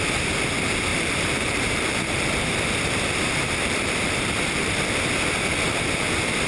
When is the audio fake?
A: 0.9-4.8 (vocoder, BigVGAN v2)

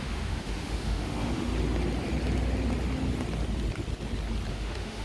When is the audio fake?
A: 0.0-1.5 (autoencoder, DAC-VAE); 4.5-5.0

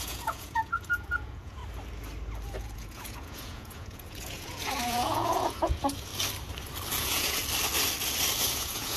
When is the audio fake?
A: 0.0-1.6 (vocoder, Vocos); 2.6-6.1; 7.0-7.4; 8.4-9.0